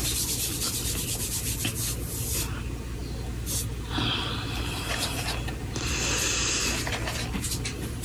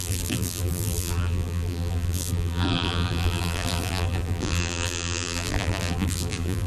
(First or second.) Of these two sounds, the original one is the first